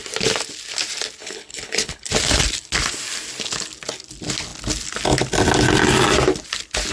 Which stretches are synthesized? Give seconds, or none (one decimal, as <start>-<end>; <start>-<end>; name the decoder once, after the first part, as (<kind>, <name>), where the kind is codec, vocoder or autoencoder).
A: 1.2-2.1 (codec, HILCodec)